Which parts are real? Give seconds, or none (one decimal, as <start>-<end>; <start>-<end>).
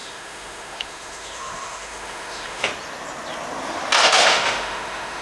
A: 2.7-4.0